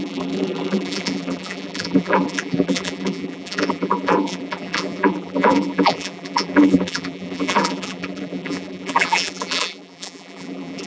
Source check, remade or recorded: remade